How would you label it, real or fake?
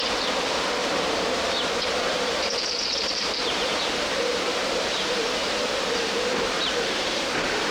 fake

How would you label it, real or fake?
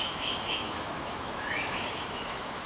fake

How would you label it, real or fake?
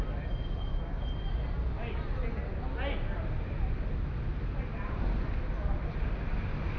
real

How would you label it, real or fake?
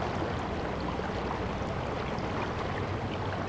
real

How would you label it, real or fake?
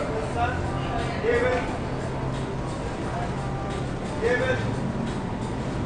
real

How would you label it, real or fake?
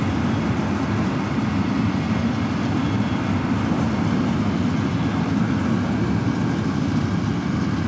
real